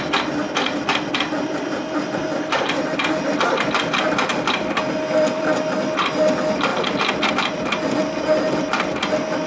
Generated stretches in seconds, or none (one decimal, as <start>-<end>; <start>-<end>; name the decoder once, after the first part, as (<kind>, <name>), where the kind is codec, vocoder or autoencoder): none